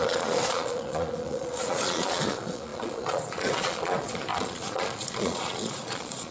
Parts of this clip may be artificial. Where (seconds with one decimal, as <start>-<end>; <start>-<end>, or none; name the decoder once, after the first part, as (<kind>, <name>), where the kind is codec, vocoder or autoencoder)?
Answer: 0.0-6.3 (vocoder, Vocos)